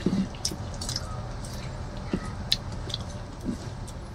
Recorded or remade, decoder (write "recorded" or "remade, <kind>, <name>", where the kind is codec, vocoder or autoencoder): recorded